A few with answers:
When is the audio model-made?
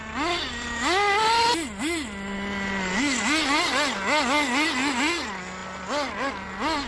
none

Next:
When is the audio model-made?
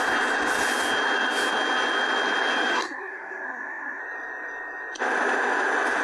2.7-4.0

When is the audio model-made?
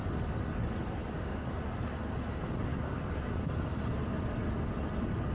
1.0-1.6; 2.7-3.3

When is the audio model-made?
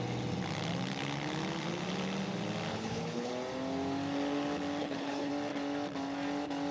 2.7-3.3; 4.8-5.3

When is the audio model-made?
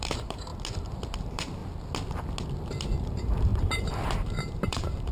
0.0-0.5; 1.2-1.6; 3.0-5.1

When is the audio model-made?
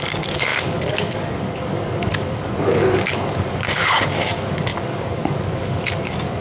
0.0-6.4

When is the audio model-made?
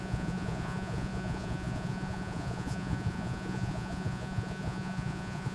0.0-5.5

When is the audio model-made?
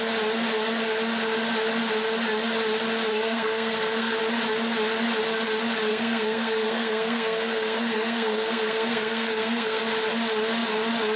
3.1-4.2; 5.9-9.8